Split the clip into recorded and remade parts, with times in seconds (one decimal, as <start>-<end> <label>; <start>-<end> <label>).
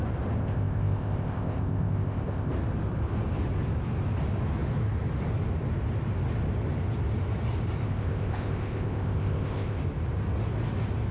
0.0-0.4 recorded; 0.4-2.5 remade; 2.5-7.8 recorded; 7.8-9.8 remade; 9.8-11.1 recorded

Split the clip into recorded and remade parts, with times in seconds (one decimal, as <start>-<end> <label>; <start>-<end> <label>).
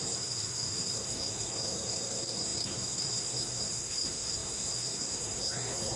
0.0-6.0 remade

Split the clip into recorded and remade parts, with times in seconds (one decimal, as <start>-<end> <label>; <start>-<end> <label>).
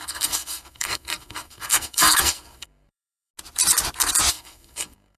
0.0-3.3 remade; 3.3-4.3 recorded; 4.3-5.2 remade